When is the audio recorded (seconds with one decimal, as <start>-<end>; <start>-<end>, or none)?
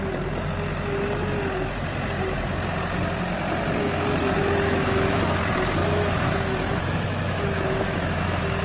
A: 0.0-4.4; 5.2-5.8